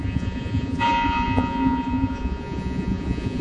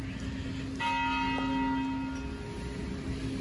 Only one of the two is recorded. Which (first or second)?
second